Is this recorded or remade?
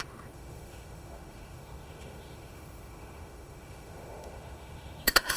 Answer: remade